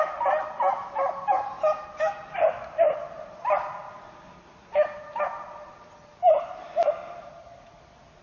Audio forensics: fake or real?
real